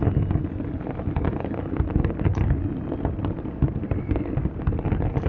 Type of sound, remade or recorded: recorded